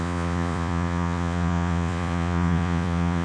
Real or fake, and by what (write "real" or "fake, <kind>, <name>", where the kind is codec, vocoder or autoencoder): fake, vocoder, Vocos